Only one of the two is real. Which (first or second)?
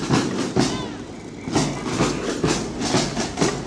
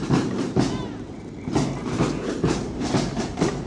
first